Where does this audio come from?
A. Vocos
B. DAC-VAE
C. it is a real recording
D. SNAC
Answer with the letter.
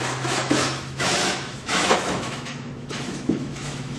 B